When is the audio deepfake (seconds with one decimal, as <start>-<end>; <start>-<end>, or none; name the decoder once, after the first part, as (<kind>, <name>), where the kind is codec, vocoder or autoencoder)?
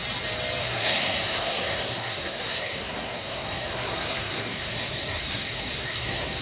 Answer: 0.6-6.4 (codec, SNAC)